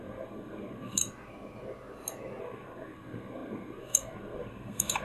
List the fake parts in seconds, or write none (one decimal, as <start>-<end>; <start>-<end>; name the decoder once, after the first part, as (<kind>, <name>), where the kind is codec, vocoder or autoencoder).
0.0-1.0 (codec, SNAC); 2.4-5.0